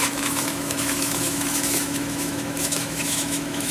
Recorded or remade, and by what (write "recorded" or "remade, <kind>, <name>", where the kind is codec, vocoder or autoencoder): remade, autoencoder, DAC-VAE